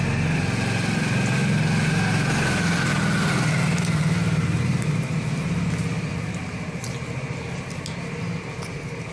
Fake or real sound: real